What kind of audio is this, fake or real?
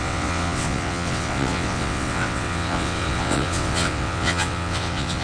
fake